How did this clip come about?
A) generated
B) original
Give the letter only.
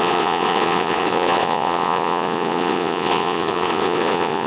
A